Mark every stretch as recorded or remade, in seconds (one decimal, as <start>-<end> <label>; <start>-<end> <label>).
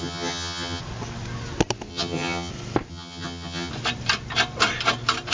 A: 0.0-0.8 remade; 0.8-1.9 recorded; 1.9-2.5 remade; 2.5-2.9 recorded; 2.9-3.7 remade; 3.7-5.3 recorded